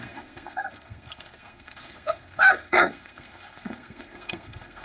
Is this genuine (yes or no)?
no